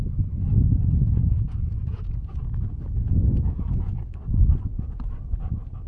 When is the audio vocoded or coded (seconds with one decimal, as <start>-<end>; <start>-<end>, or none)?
0.5-4.0; 4.7-5.2